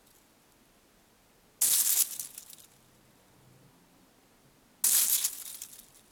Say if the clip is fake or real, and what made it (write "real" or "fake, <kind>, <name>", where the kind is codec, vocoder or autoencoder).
real